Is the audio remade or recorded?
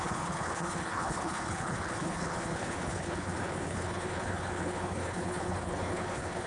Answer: remade